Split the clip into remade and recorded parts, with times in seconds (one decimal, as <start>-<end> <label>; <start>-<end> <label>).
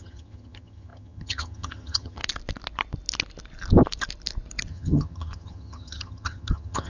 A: 0.0-2.2 remade; 2.2-4.7 recorded; 4.7-6.9 remade